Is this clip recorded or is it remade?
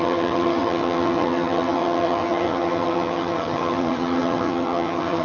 remade